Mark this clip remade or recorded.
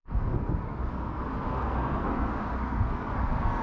remade